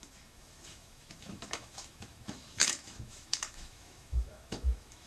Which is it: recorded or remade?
remade